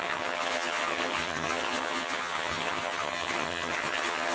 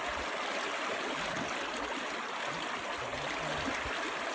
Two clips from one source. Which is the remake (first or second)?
first